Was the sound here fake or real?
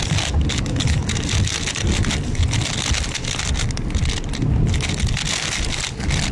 real